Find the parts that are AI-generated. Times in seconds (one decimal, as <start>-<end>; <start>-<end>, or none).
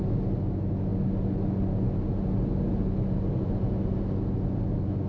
none